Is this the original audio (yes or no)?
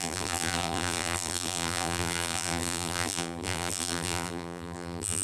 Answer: no